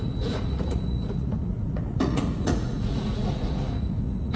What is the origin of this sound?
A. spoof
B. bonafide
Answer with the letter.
A